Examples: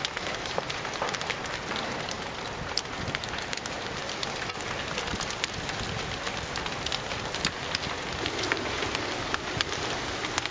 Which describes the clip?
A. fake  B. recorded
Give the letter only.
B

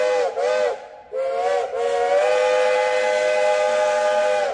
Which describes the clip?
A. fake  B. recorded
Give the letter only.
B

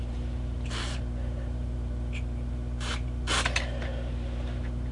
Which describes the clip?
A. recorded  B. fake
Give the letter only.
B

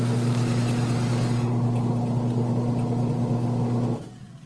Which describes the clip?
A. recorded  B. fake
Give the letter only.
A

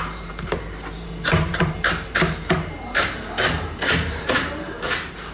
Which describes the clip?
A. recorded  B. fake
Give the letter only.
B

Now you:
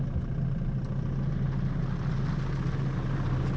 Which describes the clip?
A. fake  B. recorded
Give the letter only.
B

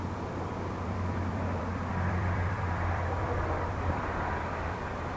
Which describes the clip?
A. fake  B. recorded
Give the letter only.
A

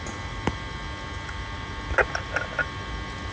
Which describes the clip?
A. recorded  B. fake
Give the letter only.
A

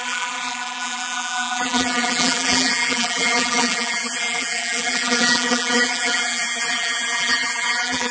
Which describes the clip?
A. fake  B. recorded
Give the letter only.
A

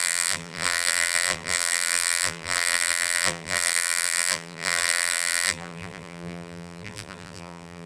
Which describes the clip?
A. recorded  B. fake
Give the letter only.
B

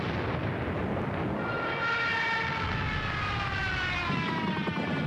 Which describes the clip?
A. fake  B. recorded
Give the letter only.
B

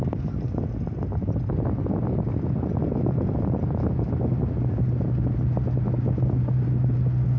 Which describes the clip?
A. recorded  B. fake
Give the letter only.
A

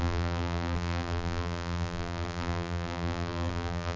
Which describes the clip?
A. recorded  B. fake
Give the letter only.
B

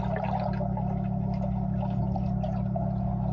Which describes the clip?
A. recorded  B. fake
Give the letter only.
A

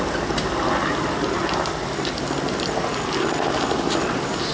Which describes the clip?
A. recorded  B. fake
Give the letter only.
A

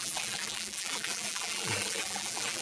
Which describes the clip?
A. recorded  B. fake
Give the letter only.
B